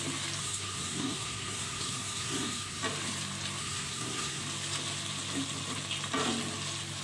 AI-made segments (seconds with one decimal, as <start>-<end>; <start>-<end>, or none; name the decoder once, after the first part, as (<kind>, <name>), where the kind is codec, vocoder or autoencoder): 0.4-2.8 (codec, SNAC); 3.6-4.4